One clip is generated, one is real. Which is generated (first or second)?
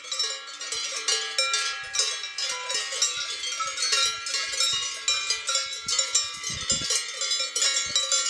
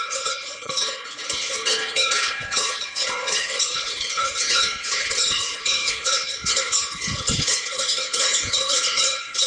second